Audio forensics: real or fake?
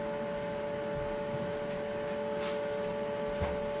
real